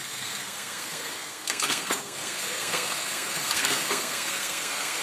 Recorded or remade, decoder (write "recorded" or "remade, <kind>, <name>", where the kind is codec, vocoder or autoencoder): remade, codec, SNAC